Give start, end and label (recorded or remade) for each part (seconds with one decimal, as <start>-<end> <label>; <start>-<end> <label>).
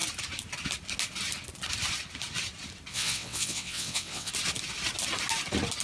0.0-2.9 recorded; 2.9-4.3 remade; 4.3-5.8 recorded